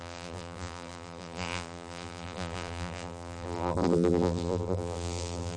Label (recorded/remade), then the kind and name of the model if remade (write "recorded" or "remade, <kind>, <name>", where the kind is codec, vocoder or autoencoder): remade, vocoder, BigVGAN v2